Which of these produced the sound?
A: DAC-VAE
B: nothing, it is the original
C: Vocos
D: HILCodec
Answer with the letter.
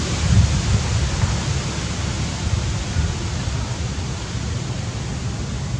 B